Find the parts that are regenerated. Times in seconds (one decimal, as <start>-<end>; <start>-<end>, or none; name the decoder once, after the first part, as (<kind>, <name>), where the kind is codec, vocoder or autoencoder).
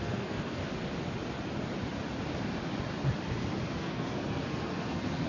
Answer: 0.0-0.6 (codec, SNAC); 3.8-5.3